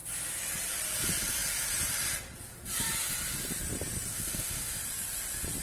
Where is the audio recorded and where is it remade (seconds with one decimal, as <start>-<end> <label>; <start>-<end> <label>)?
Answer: 0.0-4.1 recorded; 4.1-4.8 remade; 4.8-5.6 recorded